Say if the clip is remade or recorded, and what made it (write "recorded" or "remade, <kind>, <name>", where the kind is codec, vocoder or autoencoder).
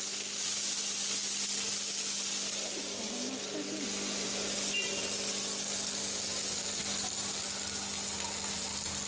recorded